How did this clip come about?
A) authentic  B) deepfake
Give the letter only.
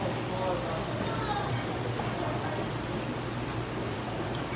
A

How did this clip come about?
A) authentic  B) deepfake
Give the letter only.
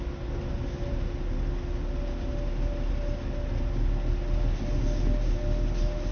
A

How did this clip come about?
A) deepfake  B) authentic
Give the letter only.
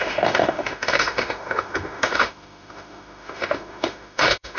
A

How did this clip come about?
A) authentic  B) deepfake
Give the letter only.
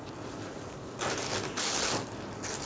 A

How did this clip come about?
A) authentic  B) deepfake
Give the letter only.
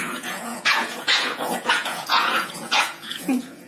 B